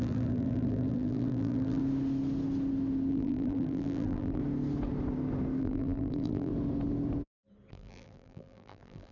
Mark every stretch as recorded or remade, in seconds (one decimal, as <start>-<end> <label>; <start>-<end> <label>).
0.0-1.8 remade; 1.8-3.1 recorded; 3.1-4.4 remade; 4.4-5.6 recorded; 5.6-6.5 remade; 6.5-7.7 recorded; 7.7-9.1 remade